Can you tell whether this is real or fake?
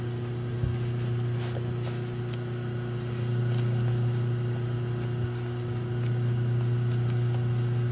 real